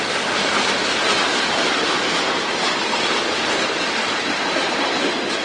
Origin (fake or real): fake